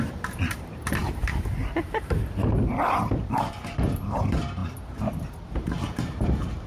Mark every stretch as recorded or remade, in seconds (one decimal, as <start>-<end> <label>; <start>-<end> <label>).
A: 0.0-6.7 remade